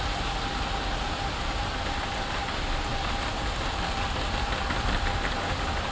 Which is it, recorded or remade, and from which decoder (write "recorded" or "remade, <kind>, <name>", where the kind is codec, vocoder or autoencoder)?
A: recorded